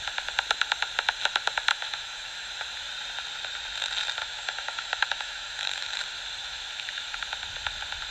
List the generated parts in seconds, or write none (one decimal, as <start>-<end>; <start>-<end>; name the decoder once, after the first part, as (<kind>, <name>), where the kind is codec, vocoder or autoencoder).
1.7-2.5 (autoencoder, DAC-VAE); 4.2-6.0; 6.4-7.2